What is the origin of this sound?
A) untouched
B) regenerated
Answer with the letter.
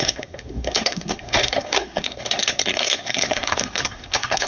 B